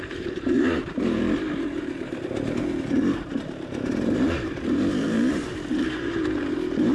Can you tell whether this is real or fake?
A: fake